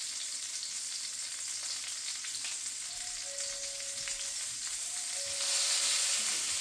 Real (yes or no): yes